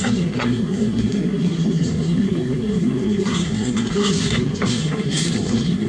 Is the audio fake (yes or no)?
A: yes